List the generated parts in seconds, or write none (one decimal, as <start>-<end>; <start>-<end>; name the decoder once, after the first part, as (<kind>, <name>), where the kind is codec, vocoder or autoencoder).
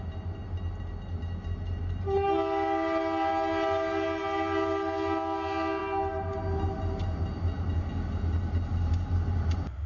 none